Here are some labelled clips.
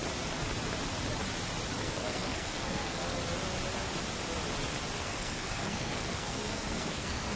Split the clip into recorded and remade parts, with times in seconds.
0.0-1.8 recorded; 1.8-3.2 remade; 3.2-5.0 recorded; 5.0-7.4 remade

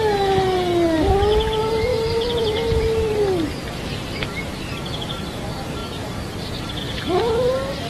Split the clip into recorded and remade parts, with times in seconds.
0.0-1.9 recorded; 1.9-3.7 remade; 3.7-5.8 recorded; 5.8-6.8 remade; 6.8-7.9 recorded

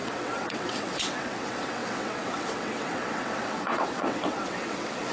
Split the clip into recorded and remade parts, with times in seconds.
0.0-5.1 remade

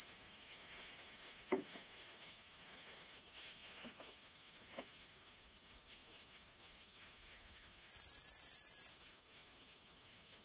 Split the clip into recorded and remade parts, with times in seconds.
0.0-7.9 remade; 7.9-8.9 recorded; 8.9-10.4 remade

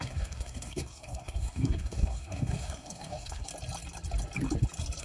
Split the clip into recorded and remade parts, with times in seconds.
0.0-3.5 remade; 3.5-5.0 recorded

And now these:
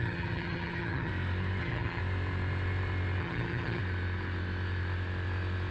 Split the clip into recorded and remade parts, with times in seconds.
0.0-1.1 remade; 1.1-1.6 recorded; 1.6-2.0 remade; 2.0-3.2 recorded; 3.2-3.8 remade; 3.8-5.7 recorded

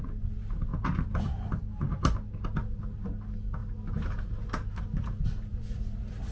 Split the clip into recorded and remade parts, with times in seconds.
0.0-5.5 recorded; 5.5-6.3 remade